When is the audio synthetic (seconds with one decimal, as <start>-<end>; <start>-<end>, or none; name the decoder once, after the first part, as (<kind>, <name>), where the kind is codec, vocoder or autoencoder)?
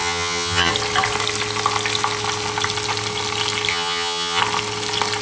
0.0-0.7 (vocoder, HiFi-GAN); 3.7-4.4